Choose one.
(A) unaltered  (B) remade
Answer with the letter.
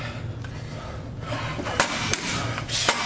A